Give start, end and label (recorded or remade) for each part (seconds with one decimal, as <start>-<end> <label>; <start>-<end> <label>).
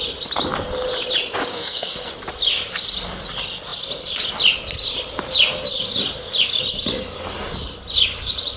0.0-1.5 recorded; 1.5-2.1 remade; 2.1-8.6 recorded